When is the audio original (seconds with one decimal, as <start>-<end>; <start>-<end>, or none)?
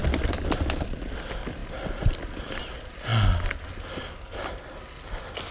0.0-5.5